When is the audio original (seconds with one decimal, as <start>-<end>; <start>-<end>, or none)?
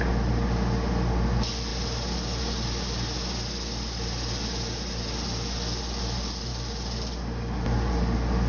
0.0-8.5